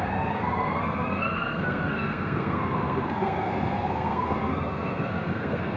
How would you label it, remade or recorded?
remade